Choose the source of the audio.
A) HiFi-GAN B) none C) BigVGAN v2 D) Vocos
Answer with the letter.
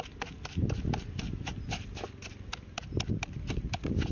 B